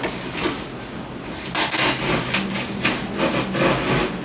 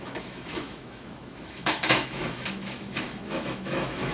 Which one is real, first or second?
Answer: first